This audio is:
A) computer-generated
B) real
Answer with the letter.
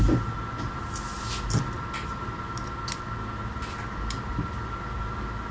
B